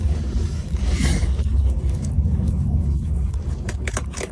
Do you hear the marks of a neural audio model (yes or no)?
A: yes